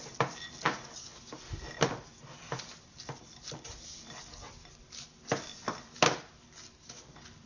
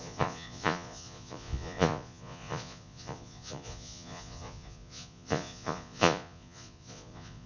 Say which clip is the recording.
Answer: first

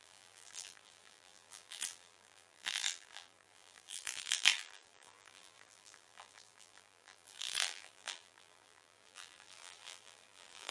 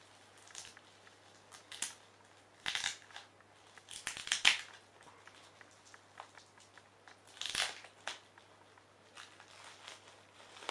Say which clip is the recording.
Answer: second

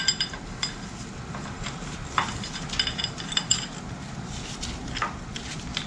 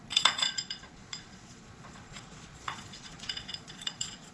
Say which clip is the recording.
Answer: first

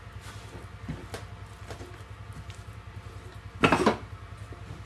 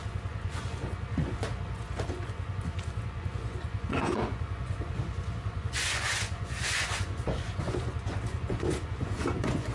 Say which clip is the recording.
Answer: first